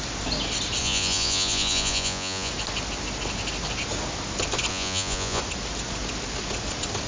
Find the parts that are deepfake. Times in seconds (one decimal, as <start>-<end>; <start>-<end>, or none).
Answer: 0.8-2.5; 4.7-5.4